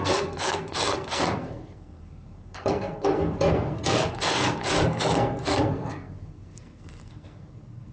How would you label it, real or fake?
fake